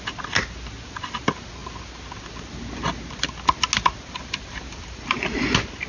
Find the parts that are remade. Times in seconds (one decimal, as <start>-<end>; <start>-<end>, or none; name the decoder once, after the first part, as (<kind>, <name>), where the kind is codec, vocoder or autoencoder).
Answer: none